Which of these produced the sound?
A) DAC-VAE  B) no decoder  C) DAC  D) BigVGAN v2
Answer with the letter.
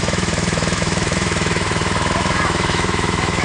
A